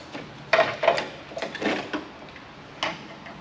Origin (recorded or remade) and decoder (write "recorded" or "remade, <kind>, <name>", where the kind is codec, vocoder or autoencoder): recorded